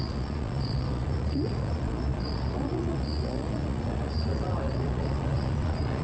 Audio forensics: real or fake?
fake